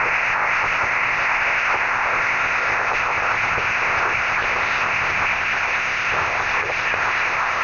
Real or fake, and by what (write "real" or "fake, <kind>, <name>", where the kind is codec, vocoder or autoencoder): fake, codec, ZipCodec